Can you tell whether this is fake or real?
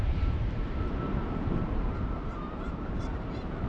fake